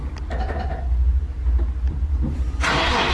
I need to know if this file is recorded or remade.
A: recorded